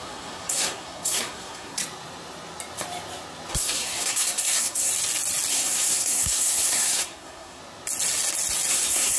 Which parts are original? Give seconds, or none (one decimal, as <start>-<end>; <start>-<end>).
1.8-3.5; 4.9-5.5; 7.6-8.7

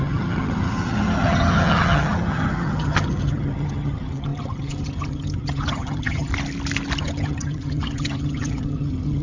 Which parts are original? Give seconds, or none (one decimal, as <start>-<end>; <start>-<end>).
6.3-7.0

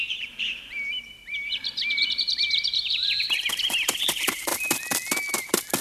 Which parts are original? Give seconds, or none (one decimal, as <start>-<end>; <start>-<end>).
4.5-5.8

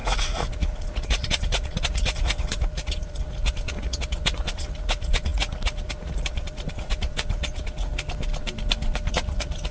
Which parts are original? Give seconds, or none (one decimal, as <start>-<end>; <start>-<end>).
7.9-9.1

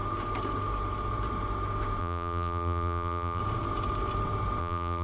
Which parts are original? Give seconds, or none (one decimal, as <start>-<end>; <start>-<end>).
0.0-2.0; 3.4-4.6

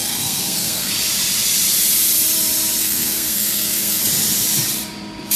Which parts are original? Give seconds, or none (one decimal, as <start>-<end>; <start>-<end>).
0.9-2.8; 4.0-5.4

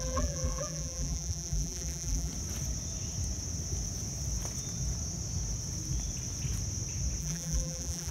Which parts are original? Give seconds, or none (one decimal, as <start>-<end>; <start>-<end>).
2.3-7.2

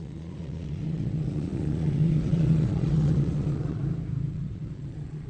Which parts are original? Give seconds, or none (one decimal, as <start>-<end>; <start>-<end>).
3.8-4.3